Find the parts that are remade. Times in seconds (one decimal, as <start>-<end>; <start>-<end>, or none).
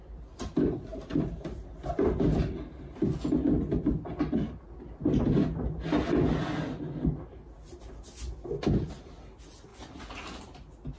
none